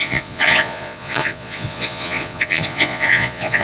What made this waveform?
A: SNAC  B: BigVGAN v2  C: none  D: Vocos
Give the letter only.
D